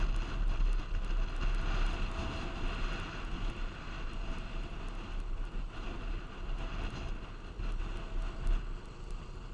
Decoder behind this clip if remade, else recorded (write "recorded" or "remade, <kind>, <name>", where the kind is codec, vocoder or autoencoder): recorded